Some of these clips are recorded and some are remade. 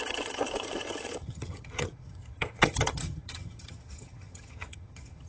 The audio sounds remade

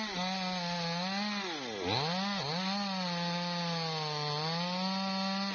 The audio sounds recorded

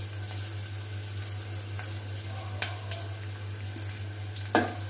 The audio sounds recorded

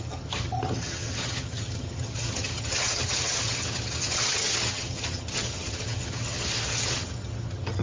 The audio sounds remade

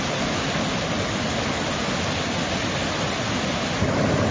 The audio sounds recorded